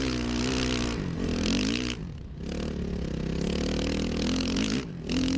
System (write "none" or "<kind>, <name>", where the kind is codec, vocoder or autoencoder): none